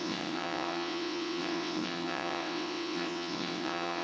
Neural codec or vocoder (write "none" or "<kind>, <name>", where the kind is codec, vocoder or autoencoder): vocoder, WaveNeXt